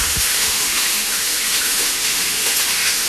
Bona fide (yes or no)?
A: no